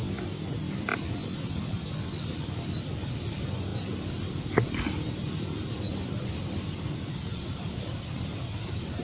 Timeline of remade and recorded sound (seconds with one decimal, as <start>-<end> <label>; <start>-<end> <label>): 0.0-9.0 recorded